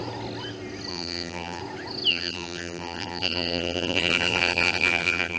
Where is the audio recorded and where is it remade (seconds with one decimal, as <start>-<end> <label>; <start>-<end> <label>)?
0.0-0.9 recorded; 0.9-1.6 remade; 1.6-2.1 recorded; 2.1-5.4 remade